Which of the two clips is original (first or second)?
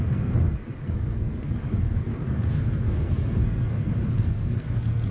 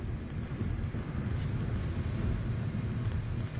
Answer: second